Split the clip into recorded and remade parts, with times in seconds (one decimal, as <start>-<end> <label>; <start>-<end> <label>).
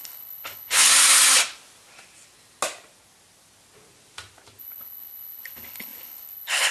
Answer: 0.0-0.9 remade; 0.9-4.6 recorded; 4.6-6.7 remade